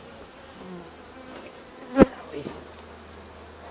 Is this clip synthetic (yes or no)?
no